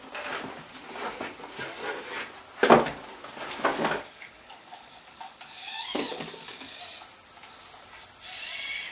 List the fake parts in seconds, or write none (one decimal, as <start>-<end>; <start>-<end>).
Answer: 3.7-6.8